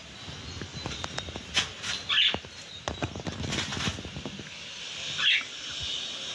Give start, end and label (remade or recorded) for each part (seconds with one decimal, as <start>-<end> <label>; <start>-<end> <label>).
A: 0.0-6.3 recorded